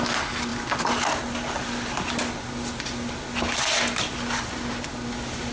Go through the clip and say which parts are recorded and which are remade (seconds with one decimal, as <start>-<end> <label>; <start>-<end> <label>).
0.0-5.5 recorded